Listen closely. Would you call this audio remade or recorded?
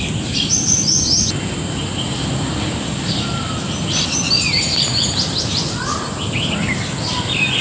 recorded